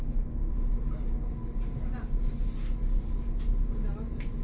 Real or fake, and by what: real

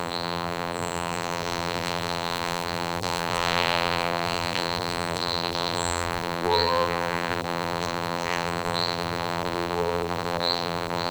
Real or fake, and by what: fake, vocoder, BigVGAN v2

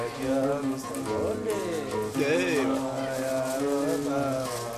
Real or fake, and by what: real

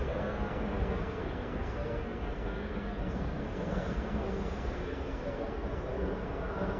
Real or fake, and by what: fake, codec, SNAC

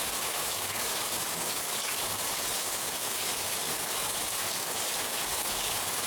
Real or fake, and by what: fake, codec, DAC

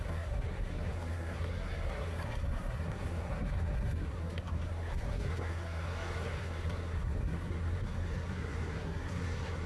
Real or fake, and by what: fake, codec, SNAC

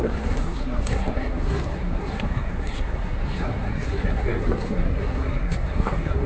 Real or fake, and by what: fake, codec, SNAC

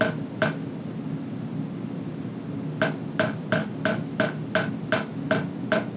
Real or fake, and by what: real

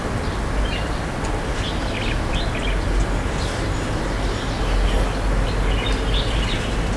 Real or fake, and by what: real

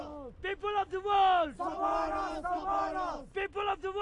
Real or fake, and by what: real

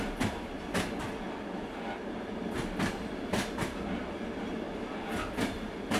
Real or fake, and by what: real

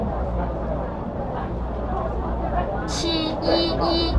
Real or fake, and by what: fake, vocoder, BigVGAN v2